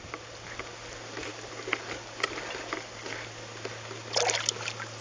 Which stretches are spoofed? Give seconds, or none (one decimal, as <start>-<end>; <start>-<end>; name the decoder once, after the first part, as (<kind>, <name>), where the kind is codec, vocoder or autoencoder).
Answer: none